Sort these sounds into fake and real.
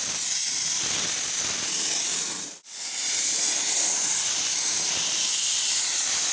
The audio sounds real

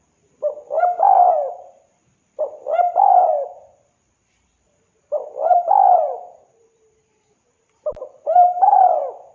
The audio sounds fake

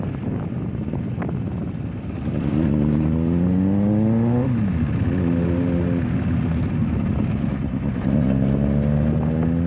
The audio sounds real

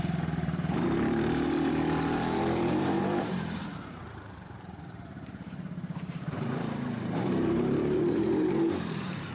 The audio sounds fake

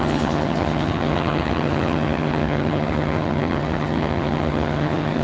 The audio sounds fake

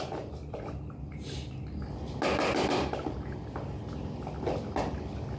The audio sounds real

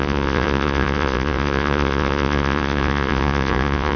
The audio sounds fake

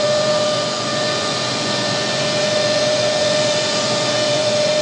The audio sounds fake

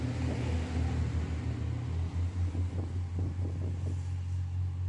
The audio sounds real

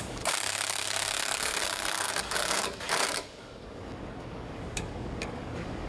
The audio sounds fake